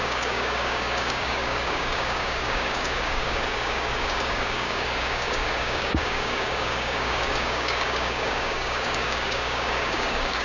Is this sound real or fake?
fake